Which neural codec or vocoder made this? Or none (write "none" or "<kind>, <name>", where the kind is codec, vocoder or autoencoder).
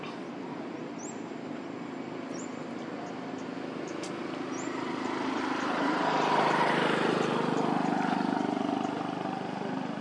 none